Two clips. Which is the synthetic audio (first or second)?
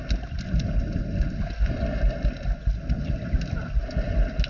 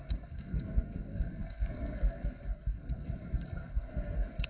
second